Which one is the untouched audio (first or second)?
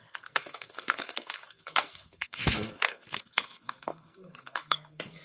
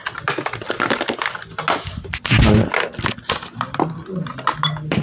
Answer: second